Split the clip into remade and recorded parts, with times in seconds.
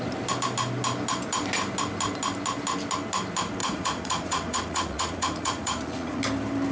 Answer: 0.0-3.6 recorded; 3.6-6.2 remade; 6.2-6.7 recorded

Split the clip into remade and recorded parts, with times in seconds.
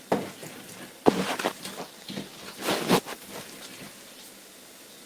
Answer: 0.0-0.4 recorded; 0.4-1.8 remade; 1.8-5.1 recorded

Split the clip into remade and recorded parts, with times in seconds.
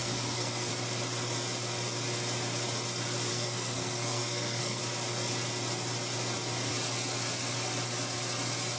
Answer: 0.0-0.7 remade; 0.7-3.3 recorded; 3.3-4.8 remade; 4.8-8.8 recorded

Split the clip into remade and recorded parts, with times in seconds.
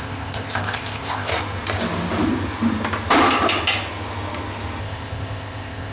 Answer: 0.0-1.3 remade; 1.3-4.8 recorded; 4.8-5.9 remade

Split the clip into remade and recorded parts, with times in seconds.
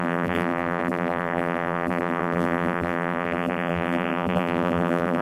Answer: 0.0-5.2 remade